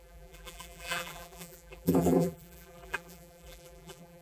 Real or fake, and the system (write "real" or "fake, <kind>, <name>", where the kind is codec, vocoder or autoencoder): fake, vocoder, BigVGAN v2